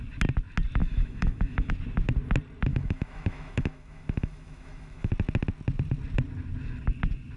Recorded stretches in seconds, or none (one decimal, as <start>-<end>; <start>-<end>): 0.0-0.8; 1.7-2.7; 5.1-7.4